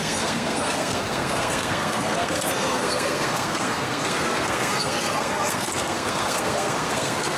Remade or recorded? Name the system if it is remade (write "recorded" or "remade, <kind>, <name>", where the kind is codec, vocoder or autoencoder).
remade, codec, SNAC